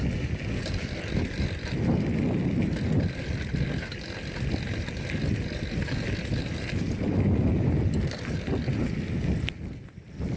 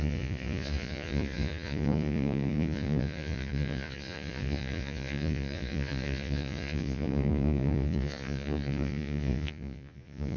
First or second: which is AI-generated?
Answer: second